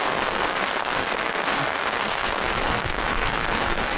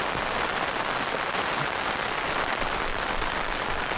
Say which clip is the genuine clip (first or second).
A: second